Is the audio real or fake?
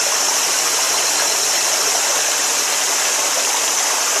fake